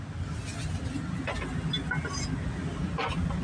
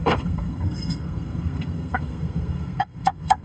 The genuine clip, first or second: first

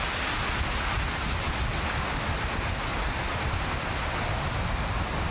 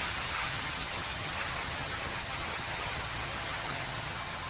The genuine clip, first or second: first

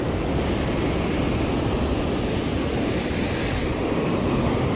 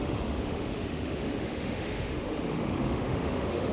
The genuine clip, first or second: first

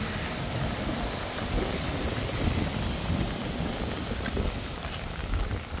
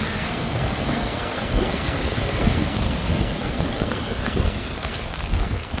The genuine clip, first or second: first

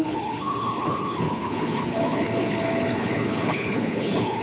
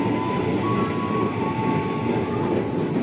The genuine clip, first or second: second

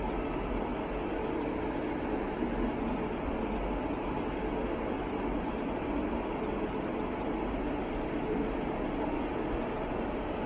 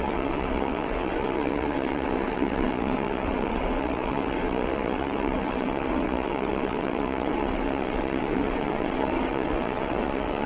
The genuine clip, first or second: first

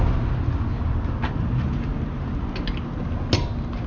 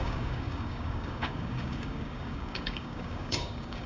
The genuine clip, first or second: first